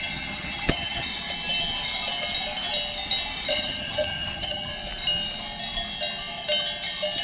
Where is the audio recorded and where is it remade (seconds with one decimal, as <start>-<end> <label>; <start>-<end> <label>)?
0.0-1.1 remade; 1.1-3.5 recorded; 3.5-4.7 remade; 4.7-7.2 recorded